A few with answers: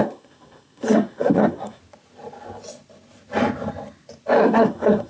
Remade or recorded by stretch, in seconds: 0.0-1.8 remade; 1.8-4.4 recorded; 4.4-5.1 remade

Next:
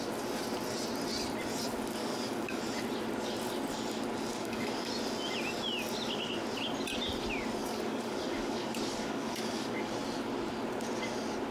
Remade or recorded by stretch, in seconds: 0.0-2.0 recorded; 2.0-2.6 remade; 2.6-4.3 recorded; 4.3-4.9 remade; 4.9-7.6 recorded; 7.6-9.9 remade; 9.9-11.5 recorded